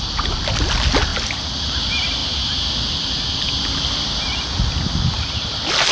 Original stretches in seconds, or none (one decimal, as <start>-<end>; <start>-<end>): 0.0-5.9